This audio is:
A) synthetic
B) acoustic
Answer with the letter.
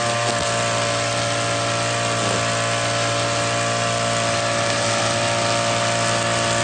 B